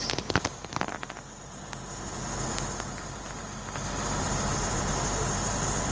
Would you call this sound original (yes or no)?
yes